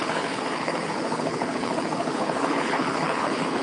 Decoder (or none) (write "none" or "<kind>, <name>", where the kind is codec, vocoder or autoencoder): codec, HILCodec